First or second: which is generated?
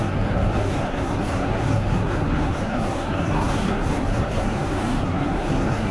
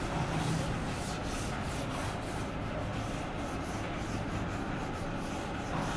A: first